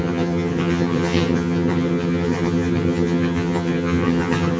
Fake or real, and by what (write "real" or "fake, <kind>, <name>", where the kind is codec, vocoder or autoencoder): fake, vocoder, HiFi-GAN